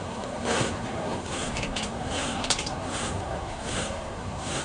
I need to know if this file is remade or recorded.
remade